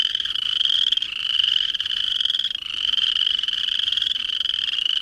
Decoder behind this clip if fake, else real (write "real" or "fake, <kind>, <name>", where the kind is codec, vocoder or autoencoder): real